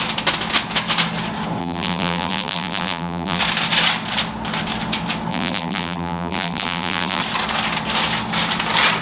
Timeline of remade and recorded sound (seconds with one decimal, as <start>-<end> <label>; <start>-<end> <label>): 0.0-1.6 recorded; 1.6-3.4 remade; 3.4-5.3 recorded; 5.3-7.2 remade; 7.2-9.0 recorded